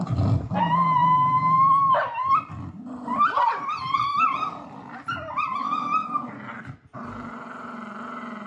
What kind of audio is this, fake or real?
real